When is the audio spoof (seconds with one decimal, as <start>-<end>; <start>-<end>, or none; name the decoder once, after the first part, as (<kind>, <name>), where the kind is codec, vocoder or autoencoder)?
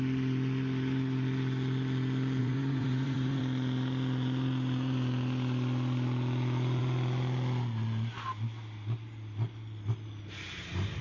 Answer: 2.4-3.4 (vocoder, Vocos)